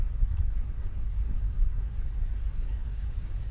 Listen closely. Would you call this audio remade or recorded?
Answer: remade